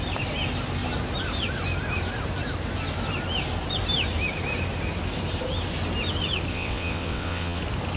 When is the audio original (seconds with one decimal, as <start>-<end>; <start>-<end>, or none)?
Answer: 0.0-6.5; 7.6-8.0